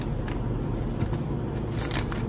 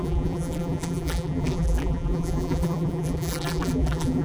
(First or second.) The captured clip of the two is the first